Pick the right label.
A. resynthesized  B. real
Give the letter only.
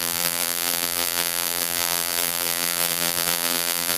A